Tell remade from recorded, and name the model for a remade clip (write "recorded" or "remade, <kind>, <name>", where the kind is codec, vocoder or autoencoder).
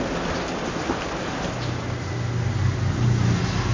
recorded